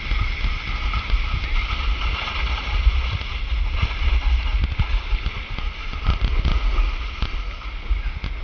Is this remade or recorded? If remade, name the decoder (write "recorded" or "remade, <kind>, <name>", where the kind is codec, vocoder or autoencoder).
recorded